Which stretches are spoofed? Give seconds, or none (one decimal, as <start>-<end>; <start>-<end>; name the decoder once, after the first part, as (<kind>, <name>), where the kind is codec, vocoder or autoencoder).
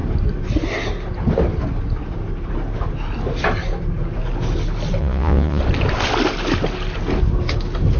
5.0-5.6 (vocoder, Vocos)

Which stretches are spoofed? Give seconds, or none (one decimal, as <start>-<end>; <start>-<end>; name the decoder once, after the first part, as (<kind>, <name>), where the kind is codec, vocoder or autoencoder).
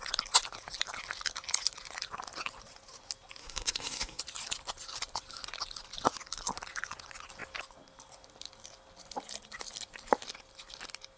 3.4-4.2 (codec, SNAC)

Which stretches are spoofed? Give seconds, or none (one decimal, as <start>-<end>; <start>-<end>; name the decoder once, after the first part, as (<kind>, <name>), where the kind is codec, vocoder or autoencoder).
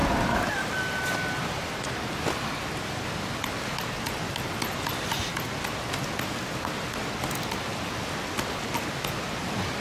0.0-0.8 (vocoder, BigVGAN v2)